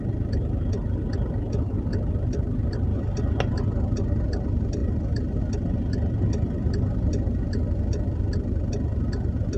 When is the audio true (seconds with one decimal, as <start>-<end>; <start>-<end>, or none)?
0.0-9.6